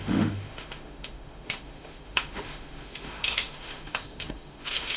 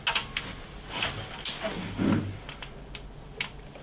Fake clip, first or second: first